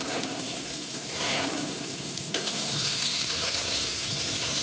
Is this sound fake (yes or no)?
yes